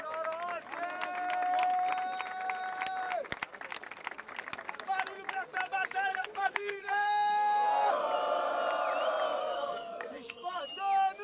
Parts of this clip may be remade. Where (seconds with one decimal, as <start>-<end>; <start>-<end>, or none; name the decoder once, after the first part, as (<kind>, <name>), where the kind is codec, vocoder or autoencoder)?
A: 6.1-7.9 (codec, SNAC); 9.4-10.6